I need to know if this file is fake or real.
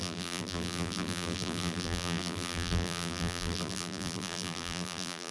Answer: fake